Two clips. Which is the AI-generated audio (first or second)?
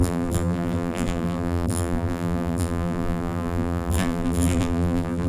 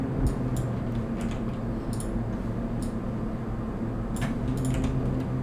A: first